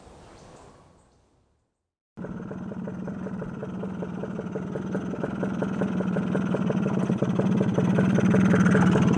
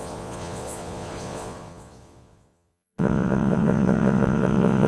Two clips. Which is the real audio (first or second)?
first